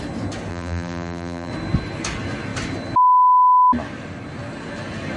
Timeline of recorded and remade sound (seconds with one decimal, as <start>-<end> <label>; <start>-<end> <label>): 0.0-0.5 recorded; 0.5-1.5 remade; 1.5-5.2 recorded